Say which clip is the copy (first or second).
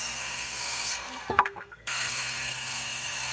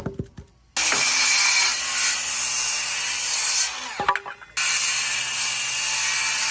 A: first